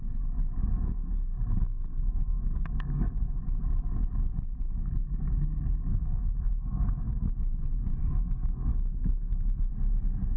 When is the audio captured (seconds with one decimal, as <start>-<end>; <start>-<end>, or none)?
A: 0.0-0.7; 3.4-5.9; 7.3-8.0; 9.7-10.4